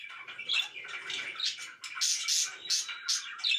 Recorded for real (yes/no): yes